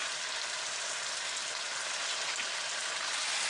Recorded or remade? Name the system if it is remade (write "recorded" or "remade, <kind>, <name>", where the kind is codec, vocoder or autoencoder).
recorded